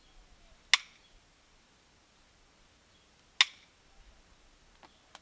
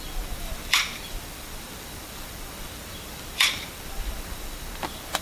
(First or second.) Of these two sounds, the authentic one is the first